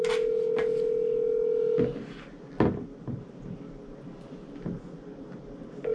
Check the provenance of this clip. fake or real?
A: real